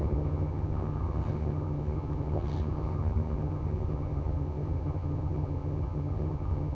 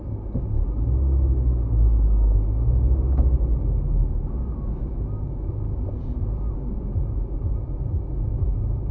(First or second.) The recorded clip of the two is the second